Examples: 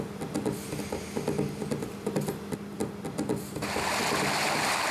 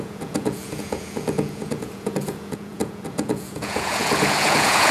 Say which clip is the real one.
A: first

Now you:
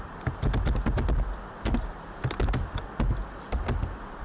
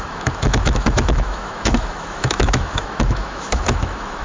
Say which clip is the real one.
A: first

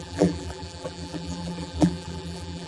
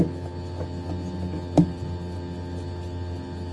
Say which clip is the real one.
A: second